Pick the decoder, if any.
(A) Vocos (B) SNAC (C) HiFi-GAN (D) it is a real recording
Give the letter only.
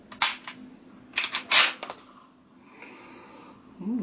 D